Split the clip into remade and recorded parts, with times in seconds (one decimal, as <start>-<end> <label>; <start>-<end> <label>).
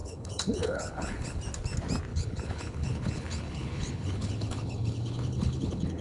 0.0-1.4 remade; 1.4-2.1 recorded; 2.1-6.0 remade